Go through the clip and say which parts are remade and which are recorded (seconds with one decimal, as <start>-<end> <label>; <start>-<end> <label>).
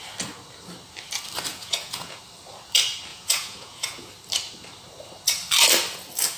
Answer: 0.0-1.5 recorded; 1.5-2.2 remade; 2.2-3.1 recorded; 3.1-4.1 remade; 4.1-6.4 recorded